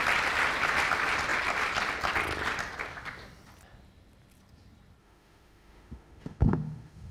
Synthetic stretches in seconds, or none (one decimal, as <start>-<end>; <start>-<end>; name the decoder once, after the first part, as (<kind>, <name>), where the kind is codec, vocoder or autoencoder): 5.0-7.1 (autoencoder, DAC-VAE)